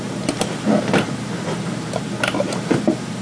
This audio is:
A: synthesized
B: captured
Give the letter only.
A